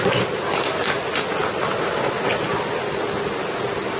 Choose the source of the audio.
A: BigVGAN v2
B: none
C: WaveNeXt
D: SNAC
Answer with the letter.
B